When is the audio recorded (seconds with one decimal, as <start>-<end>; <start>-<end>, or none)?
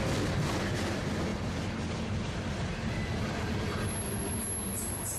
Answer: 0.0-5.2